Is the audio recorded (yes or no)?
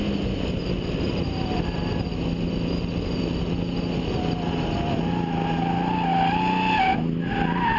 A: yes